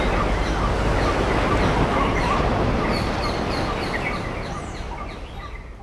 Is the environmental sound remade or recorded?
recorded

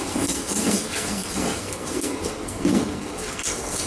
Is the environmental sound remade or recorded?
remade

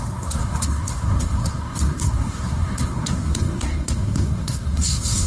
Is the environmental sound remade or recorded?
remade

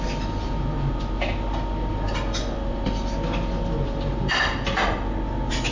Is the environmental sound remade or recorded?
recorded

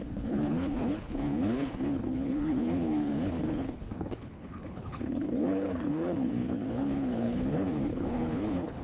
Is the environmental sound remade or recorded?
remade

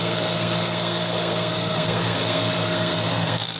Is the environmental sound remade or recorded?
remade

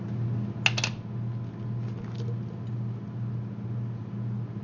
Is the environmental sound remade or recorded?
recorded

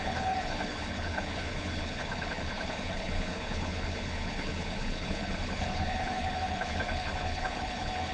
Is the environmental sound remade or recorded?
remade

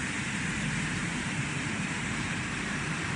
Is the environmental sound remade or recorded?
remade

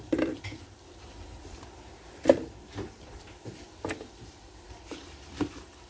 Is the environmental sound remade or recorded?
recorded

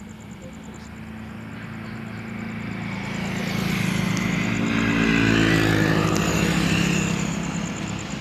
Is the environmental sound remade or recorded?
recorded